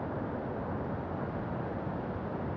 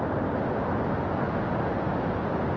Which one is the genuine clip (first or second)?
second